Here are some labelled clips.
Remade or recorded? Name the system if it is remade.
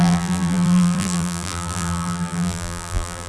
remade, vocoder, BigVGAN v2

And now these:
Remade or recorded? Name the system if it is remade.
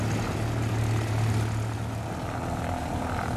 recorded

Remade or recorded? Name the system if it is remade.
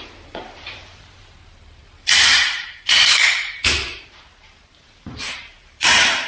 remade, vocoder, BigVGAN v2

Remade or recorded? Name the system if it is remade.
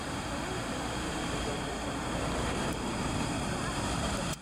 remade, vocoder, BigVGAN v2